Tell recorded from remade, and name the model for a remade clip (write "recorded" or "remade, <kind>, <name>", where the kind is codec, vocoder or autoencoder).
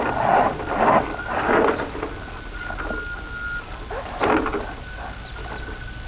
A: recorded